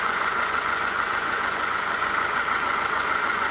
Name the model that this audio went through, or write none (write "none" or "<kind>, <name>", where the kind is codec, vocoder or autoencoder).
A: vocoder, Vocos